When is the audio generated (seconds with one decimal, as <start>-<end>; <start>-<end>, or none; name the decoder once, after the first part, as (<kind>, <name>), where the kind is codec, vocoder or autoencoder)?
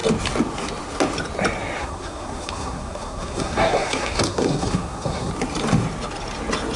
1.8-5.3 (codec, SNAC)